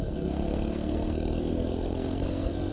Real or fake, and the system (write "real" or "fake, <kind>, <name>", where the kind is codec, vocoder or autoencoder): fake, codec, SNAC